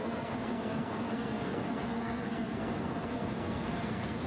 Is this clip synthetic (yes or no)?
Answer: yes